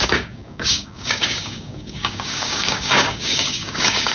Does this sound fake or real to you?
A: fake